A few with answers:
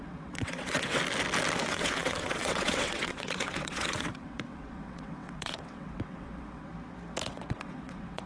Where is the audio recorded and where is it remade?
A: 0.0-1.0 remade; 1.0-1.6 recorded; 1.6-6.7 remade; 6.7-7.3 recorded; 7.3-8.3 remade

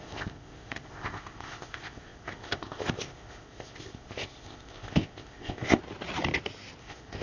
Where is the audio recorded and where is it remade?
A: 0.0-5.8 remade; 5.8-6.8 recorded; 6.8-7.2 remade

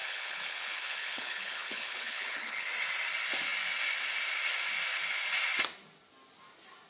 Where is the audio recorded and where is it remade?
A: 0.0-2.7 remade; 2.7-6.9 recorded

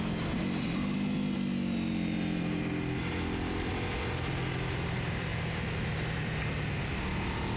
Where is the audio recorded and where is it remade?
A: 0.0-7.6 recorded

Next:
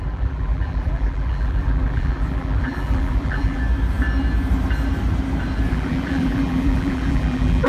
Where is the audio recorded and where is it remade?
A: 0.0-3.6 remade; 3.6-5.7 recorded; 5.7-7.7 remade